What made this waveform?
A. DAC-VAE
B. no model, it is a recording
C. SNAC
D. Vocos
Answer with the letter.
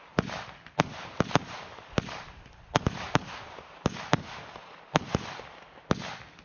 B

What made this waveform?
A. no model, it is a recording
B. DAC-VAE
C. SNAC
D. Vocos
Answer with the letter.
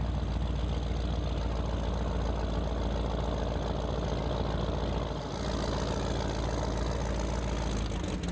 A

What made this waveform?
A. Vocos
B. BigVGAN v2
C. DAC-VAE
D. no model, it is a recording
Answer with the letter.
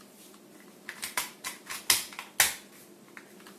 D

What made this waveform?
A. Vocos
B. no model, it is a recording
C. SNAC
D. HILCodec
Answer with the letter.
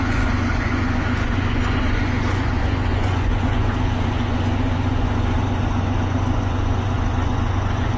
A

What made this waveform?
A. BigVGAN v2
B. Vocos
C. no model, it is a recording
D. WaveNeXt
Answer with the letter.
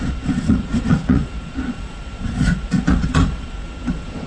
B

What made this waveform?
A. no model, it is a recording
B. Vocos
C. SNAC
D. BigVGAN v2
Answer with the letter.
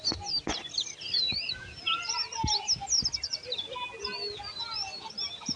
A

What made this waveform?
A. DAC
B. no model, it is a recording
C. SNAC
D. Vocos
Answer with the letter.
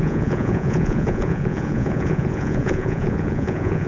D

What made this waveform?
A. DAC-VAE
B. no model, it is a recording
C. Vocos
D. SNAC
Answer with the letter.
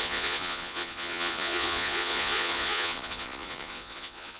C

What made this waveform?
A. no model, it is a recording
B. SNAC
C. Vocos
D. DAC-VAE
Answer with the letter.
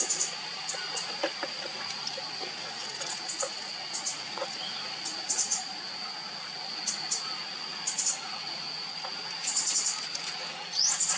C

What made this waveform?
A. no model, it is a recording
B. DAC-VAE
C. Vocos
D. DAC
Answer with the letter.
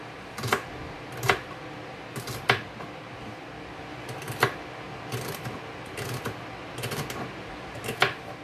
A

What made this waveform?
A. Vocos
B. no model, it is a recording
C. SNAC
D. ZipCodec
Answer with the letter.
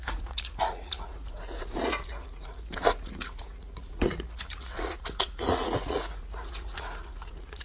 A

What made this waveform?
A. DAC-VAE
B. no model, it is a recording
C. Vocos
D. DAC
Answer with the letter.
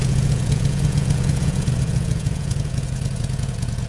C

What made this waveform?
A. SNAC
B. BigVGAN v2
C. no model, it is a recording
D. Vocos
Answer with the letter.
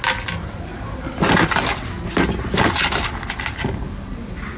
C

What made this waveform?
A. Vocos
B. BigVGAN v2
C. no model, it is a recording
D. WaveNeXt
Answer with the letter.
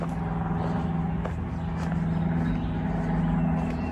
C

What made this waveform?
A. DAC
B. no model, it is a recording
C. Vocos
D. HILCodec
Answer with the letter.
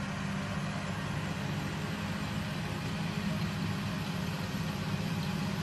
B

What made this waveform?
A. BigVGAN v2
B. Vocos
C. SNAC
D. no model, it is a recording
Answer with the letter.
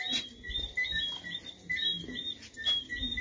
D